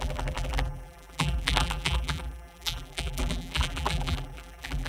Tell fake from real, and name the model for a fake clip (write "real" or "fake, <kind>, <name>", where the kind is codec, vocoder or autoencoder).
fake, vocoder, BigVGAN v2